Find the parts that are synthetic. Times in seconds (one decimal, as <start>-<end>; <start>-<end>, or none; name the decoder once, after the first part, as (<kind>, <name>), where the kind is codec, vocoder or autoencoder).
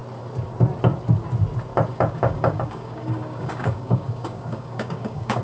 1.9-5.4 (codec, DAC)